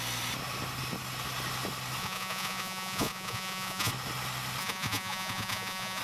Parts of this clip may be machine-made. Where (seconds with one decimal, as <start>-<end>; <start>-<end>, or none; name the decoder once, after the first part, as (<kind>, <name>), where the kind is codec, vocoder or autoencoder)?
2.0-3.9 (vocoder, Vocos); 4.6-6.0